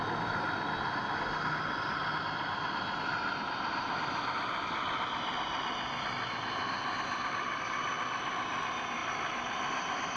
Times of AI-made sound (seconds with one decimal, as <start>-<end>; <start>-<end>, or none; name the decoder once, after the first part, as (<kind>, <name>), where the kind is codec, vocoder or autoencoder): none